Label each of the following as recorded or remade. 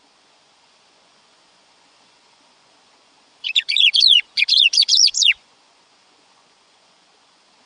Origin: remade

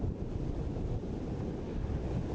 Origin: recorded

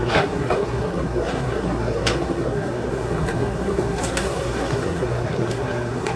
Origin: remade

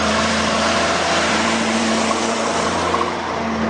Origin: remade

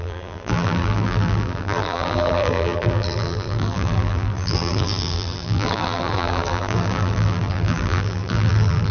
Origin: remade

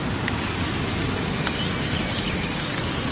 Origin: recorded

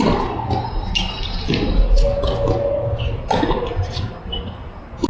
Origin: recorded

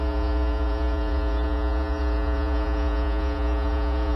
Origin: remade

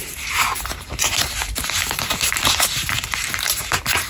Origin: remade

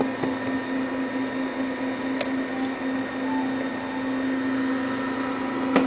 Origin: recorded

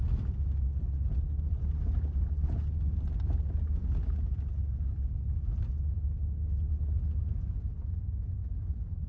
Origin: recorded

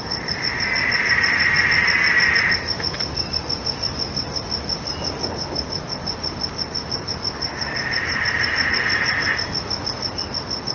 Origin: recorded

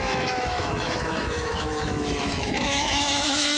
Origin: remade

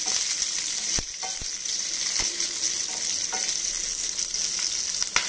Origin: recorded